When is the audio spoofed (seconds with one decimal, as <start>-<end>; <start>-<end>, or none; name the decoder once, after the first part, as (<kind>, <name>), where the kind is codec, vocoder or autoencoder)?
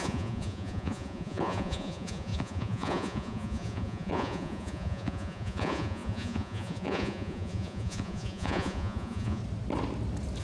0.0-9.4 (vocoder, Vocos)